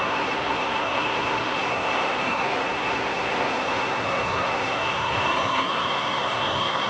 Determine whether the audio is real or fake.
fake